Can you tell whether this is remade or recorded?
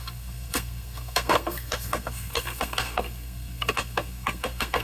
remade